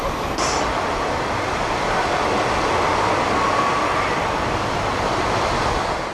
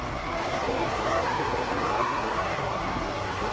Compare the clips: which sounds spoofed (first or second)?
second